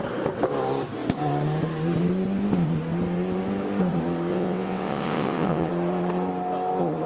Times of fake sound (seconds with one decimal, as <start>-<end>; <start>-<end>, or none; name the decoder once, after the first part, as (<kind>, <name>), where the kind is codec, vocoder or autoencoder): 4.3-5.7 (vocoder, WaveNeXt)